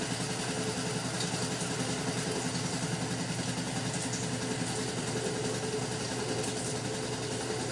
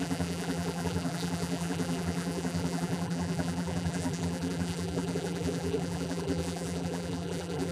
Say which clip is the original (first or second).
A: first